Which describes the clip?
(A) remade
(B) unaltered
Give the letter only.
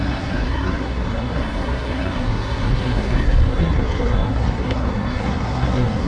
A